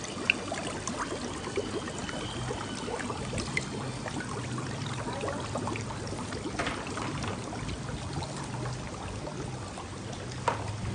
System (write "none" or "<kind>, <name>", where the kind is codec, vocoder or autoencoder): none